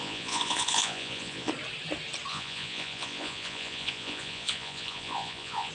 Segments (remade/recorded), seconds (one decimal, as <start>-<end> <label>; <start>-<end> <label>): 0.0-1.5 remade; 1.5-2.3 recorded; 2.3-5.7 remade